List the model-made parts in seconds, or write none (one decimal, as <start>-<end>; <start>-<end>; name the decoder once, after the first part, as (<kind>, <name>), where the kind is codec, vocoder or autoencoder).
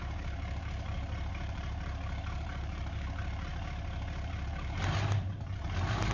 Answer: 0.0-3.5 (vocoder, BigVGAN v2); 4.1-6.1